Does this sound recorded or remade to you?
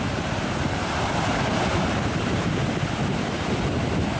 remade